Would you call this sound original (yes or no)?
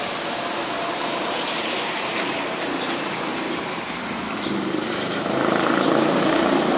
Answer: no